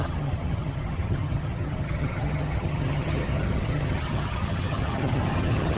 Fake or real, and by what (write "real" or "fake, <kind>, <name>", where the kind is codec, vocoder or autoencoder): fake, vocoder, HiFi-GAN